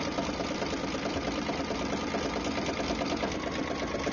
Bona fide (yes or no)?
yes